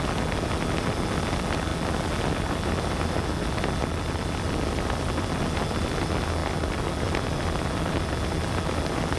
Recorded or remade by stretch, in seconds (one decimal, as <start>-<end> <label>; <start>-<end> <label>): 0.0-9.2 recorded